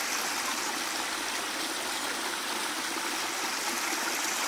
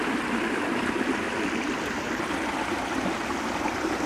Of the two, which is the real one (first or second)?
first